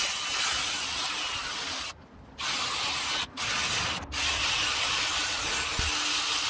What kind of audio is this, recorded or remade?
recorded